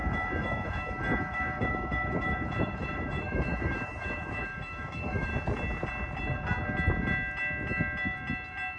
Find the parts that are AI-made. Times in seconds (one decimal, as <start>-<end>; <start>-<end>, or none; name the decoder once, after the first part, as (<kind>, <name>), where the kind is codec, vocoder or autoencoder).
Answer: 0.0-5.3 (autoencoder, DAC-VAE)